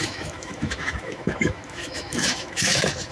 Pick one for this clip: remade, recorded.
remade